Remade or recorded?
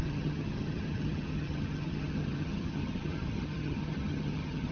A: remade